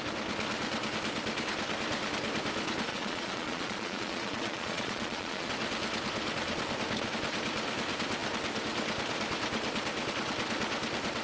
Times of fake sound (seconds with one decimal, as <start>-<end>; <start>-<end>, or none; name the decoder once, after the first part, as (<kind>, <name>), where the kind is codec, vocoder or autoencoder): 2.9-5.5 (vocoder, Vocos)